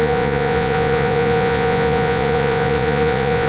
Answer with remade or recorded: remade